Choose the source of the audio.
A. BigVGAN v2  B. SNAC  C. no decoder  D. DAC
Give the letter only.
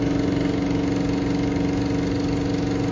C